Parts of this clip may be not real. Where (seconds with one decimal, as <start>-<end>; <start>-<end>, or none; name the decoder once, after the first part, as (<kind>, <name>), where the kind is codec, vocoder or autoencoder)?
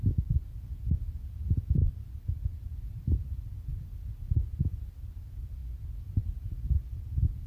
none